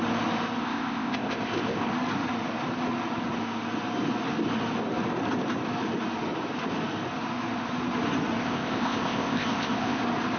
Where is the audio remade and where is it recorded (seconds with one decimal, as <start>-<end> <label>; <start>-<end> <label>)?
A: 0.0-0.6 recorded; 0.6-1.9 remade; 1.9-8.4 recorded; 8.4-10.0 remade; 10.0-10.4 recorded